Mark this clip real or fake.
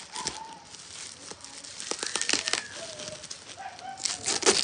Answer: real